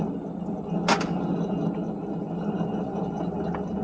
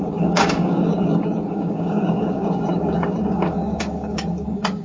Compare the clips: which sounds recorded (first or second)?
first